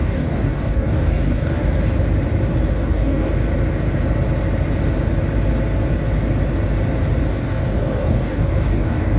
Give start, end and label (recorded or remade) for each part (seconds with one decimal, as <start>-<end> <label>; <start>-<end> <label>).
0.0-1.6 remade; 1.6-2.7 recorded; 2.7-3.3 remade; 3.3-7.3 recorded; 7.3-9.2 remade